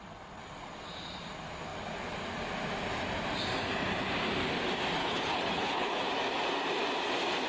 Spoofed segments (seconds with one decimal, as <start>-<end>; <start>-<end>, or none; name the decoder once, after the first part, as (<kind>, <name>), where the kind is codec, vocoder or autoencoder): 5.0-6.0 (codec, HILCodec)